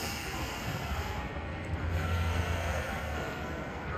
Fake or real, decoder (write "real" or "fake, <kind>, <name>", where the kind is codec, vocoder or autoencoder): fake, codec, SNAC